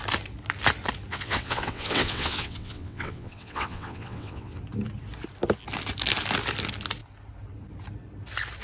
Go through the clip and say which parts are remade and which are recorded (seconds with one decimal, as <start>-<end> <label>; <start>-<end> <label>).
0.0-1.1 recorded; 1.1-4.6 remade; 4.6-8.6 recorded